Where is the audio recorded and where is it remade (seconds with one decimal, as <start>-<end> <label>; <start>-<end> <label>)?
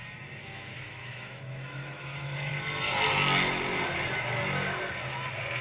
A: 0.0-0.4 recorded; 0.4-2.5 remade; 2.5-5.6 recorded